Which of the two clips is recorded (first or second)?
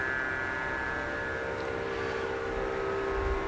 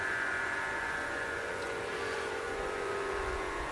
first